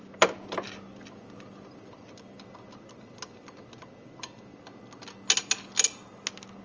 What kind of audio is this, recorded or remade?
recorded